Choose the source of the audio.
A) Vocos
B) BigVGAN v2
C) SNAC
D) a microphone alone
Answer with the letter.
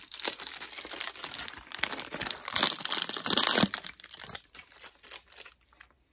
B